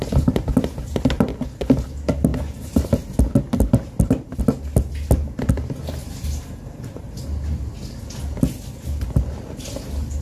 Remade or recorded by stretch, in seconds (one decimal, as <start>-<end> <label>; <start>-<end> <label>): 0.0-2.3 recorded; 2.3-4.4 remade; 4.4-6.0 recorded; 6.0-7.6 remade; 7.6-10.2 recorded